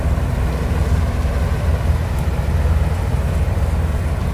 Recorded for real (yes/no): no